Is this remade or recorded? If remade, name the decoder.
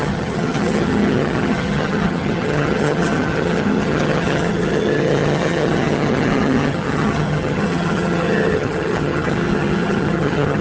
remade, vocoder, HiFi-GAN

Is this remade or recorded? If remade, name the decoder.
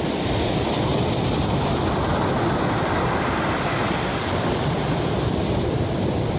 recorded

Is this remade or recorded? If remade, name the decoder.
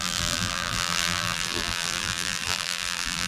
remade, vocoder, BigVGAN v2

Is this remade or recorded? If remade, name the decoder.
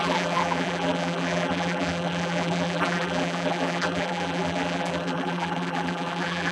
remade, vocoder, BigVGAN v2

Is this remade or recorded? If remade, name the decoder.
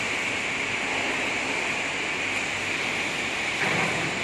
recorded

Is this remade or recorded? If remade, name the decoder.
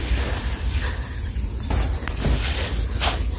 recorded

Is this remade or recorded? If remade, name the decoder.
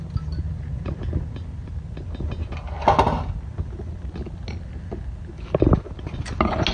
recorded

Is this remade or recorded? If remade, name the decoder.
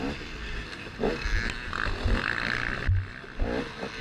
recorded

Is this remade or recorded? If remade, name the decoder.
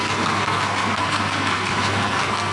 remade, codec, SNAC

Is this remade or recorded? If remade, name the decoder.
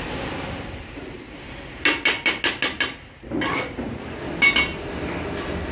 recorded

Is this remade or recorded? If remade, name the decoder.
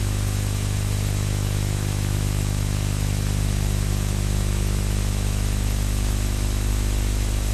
remade, autoencoder, DAC-VAE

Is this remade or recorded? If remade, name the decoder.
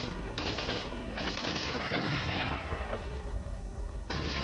remade, codec, SNAC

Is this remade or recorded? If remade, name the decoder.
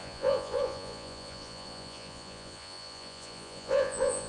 remade, vocoder, Vocos